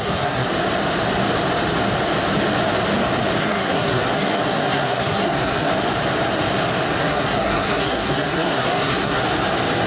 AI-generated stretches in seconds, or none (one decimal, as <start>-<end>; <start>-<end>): 0.0-0.5; 3.4-5.7; 7.0-9.2